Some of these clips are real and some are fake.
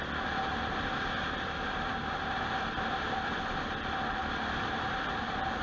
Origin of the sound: real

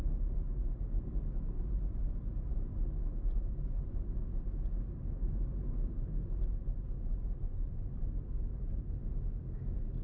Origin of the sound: real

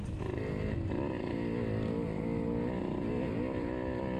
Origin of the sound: real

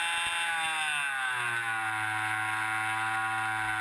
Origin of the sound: real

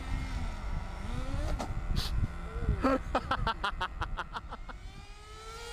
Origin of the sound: real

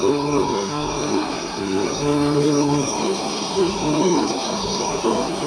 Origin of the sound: fake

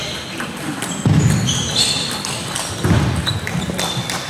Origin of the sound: real